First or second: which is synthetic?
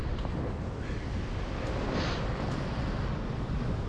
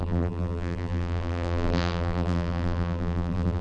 second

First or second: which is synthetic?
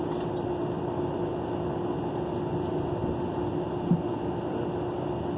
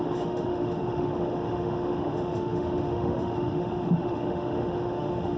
second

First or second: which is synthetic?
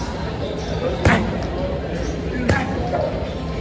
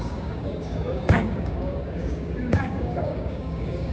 second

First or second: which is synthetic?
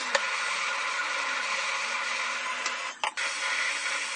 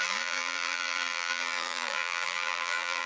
second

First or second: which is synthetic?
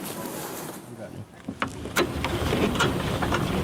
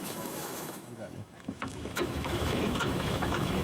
second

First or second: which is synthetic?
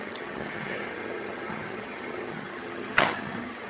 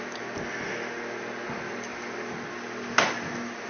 first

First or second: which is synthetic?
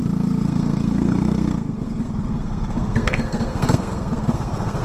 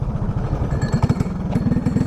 first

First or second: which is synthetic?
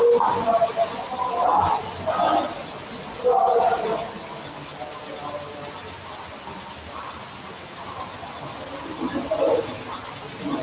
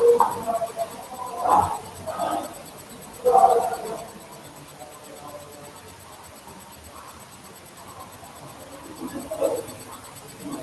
second